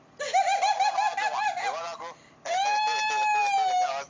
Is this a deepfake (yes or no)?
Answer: no